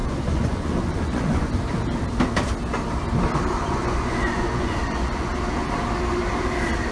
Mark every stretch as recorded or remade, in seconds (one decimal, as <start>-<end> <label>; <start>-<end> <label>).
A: 0.0-1.5 remade; 1.5-3.6 recorded; 3.6-5.3 remade; 5.3-6.9 recorded